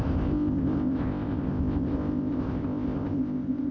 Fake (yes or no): yes